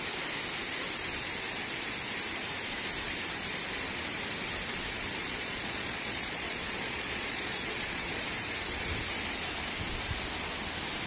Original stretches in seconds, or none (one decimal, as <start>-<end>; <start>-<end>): 0.0-5.2; 8.2-11.1